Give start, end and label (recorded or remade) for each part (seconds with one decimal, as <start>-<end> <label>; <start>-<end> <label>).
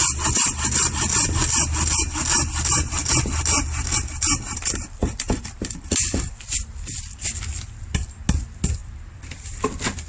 0.0-0.9 remade; 0.9-5.0 recorded; 5.0-7.4 remade; 7.4-10.1 recorded